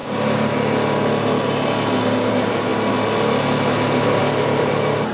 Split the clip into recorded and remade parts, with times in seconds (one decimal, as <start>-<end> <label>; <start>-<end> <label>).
0.0-2.3 recorded; 2.3-2.7 remade; 2.7-4.2 recorded; 4.2-5.1 remade